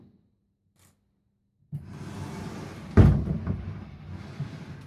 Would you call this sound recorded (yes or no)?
yes